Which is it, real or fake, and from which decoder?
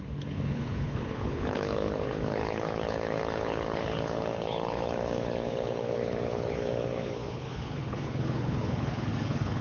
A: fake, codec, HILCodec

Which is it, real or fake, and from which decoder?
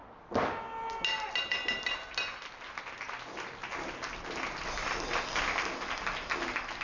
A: real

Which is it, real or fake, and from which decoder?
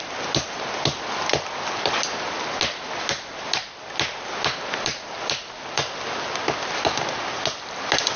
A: real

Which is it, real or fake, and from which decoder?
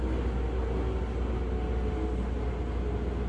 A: real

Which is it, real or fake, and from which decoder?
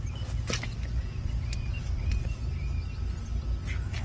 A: real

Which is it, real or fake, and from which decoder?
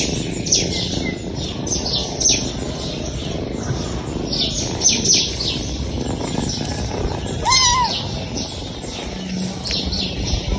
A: real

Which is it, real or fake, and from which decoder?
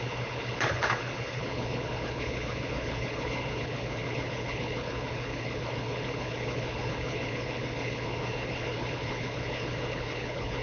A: fake, codec, HILCodec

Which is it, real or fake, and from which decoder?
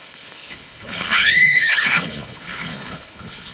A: fake, codec, HILCodec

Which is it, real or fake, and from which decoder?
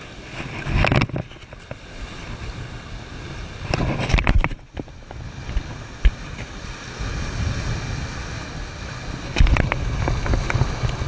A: real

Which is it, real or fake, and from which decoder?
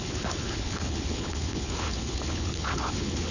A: fake, codec, HILCodec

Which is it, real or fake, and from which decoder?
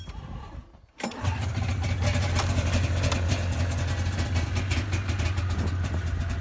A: real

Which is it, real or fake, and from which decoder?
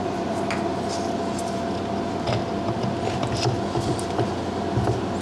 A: real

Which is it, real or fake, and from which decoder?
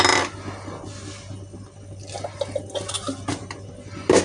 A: real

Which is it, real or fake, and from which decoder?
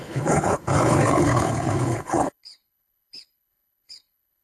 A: fake, codec, HILCodec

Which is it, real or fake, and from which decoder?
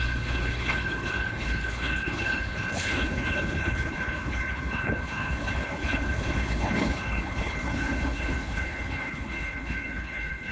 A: fake, codec, HILCodec